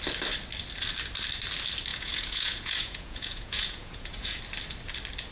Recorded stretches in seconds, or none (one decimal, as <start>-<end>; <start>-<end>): 0.0-1.9; 4.4-5.3